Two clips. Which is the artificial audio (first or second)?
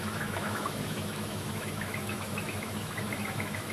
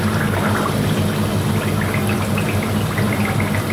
first